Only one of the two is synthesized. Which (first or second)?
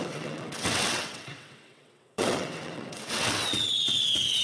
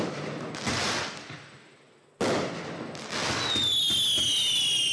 first